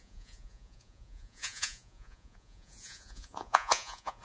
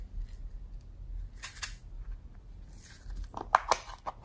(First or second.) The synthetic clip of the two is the first